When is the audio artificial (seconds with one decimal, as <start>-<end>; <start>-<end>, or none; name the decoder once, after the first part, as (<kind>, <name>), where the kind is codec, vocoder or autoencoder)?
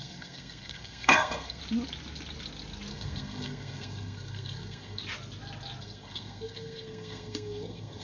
0.0-1.6 (codec, SNAC); 2.9-5.0; 5.8-8.0